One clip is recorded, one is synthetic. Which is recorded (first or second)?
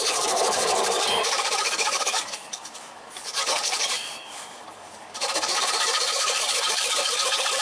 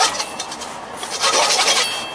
second